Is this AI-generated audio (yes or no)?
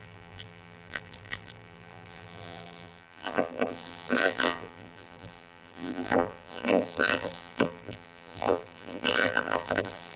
yes